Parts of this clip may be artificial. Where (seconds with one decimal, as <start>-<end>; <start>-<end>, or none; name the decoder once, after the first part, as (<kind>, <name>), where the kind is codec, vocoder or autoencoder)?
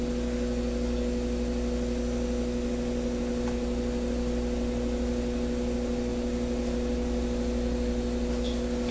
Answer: none